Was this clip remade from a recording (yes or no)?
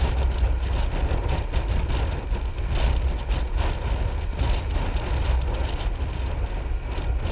no